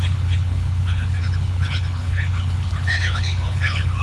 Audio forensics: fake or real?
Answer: fake